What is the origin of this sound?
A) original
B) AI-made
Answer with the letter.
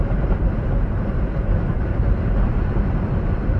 A